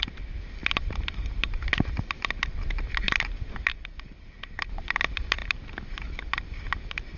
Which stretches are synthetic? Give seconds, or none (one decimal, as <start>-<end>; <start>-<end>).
none